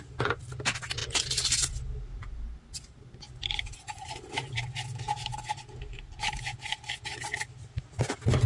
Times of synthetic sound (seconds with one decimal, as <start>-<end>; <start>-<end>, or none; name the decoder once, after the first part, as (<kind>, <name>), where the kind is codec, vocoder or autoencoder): none